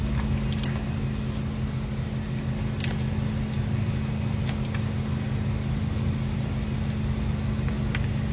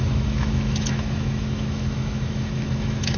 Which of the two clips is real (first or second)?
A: first